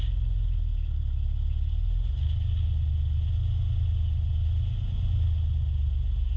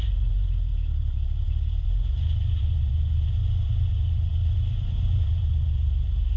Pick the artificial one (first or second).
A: second